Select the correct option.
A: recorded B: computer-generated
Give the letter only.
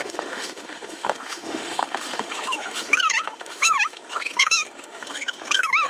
B